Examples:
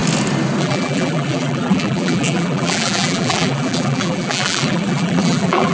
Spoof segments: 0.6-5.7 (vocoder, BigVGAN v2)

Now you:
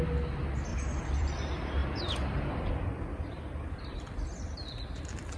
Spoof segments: 0.7-1.3 (vocoder, BigVGAN v2); 1.8-5.0

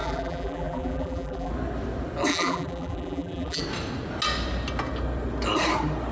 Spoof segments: 0.0-1.5 (vocoder, BigVGAN v2); 2.3-3.6

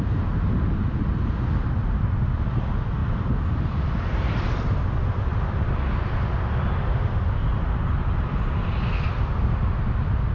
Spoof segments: 3.0-4.9 (vocoder, BigVGAN v2)

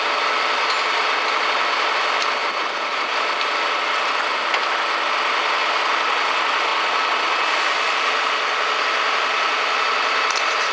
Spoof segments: 6.7-10.7 (vocoder, BigVGAN v2)

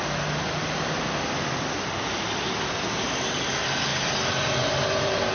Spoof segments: 3.9-5.3 (vocoder, BigVGAN v2)

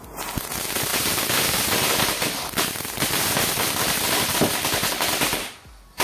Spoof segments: none

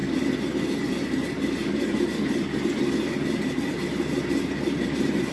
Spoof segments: 3.2-3.8 (vocoder, BigVGAN v2)